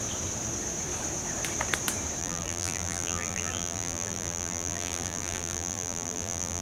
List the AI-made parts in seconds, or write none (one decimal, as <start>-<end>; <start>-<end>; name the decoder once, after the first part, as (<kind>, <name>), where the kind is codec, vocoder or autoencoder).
2.2-6.6 (vocoder, BigVGAN v2)